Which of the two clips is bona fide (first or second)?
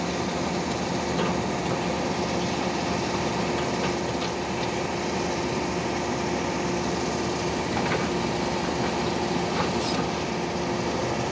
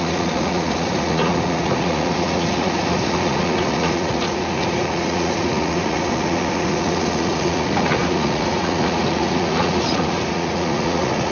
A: first